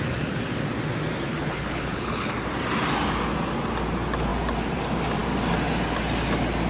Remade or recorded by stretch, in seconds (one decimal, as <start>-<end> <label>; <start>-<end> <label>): 0.0-1.3 recorded; 1.3-2.3 remade; 2.3-6.7 recorded